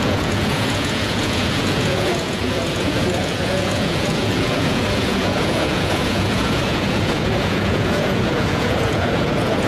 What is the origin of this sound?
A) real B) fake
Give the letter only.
B